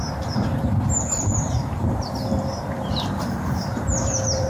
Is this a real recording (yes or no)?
no